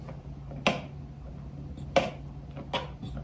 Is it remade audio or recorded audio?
recorded